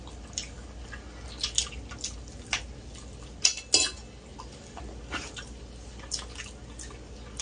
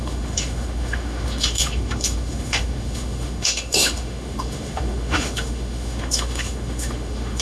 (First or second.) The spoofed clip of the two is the second